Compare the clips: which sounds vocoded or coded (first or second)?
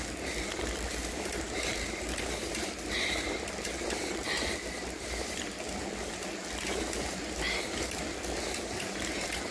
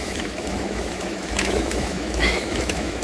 second